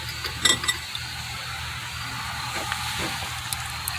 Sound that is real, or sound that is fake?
real